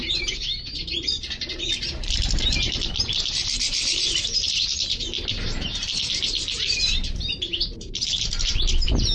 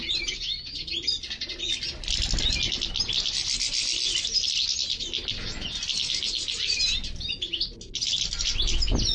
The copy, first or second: first